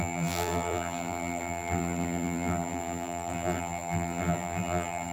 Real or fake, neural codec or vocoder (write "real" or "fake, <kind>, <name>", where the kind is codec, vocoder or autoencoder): fake, vocoder, BigVGAN v2